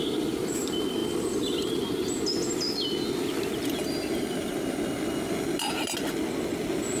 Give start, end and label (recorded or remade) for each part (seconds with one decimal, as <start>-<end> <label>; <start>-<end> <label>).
0.0-7.0 recorded